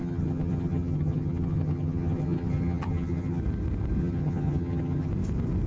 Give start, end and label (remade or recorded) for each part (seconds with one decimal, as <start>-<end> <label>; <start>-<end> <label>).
0.0-3.4 remade; 3.4-4.0 recorded; 4.0-5.1 remade; 5.1-5.7 recorded